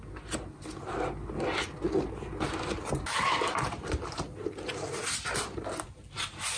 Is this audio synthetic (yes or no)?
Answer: no